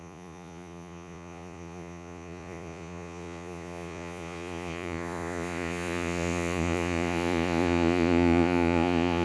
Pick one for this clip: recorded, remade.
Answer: remade